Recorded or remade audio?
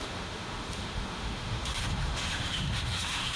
remade